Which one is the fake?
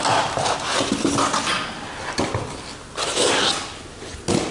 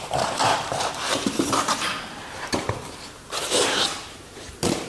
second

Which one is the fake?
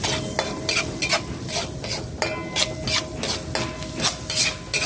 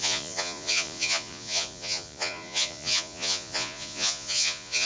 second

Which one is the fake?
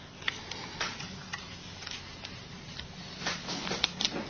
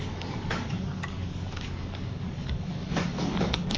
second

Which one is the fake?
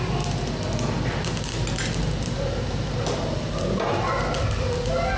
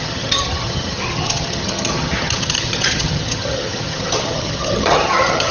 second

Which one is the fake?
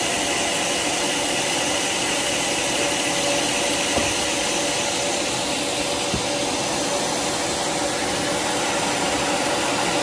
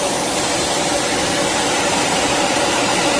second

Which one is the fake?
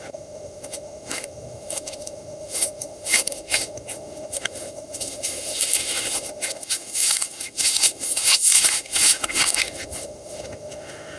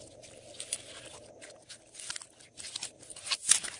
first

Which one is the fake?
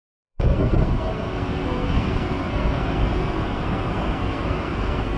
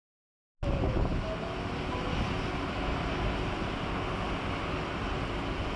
first